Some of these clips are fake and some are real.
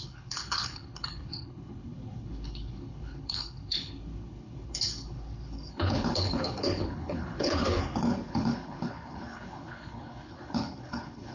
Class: fake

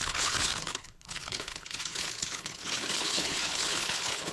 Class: fake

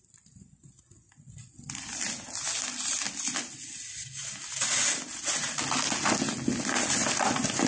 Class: real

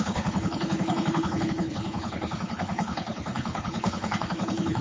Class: fake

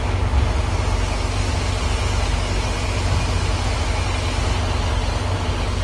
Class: real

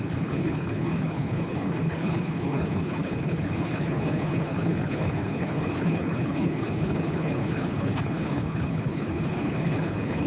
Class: fake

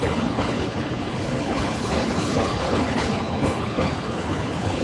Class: fake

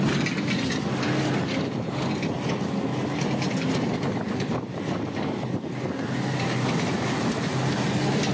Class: real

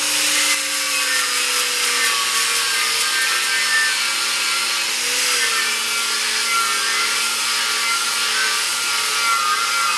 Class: real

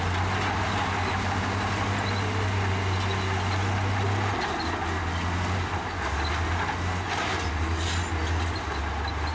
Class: real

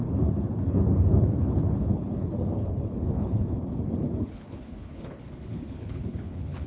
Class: fake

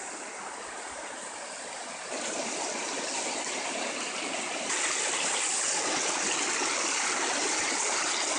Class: real